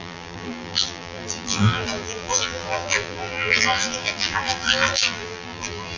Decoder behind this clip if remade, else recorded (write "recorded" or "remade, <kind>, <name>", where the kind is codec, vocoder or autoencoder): remade, vocoder, BigVGAN v2